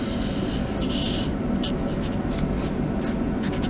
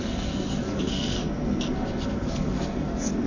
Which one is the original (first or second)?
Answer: first